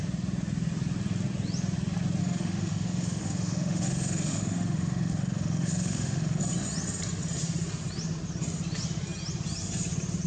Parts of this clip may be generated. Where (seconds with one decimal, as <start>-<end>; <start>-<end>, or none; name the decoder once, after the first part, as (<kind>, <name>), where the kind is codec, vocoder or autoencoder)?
2.2-6.4 (autoencoder, DAC-VAE)